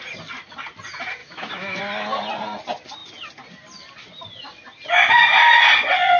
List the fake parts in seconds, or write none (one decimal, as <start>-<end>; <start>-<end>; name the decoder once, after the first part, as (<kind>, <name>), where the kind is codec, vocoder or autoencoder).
1.2-1.8 (autoencoder, DAC-VAE)